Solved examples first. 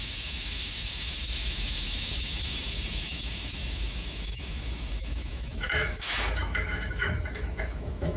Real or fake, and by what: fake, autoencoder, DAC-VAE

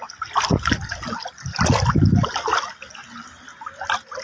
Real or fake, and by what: real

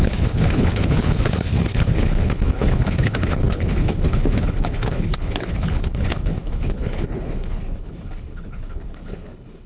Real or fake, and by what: fake, codec, HILCodec